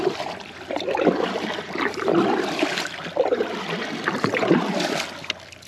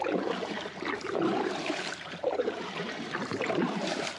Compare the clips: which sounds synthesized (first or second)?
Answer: second